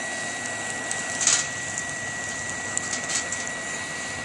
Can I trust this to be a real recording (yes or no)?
yes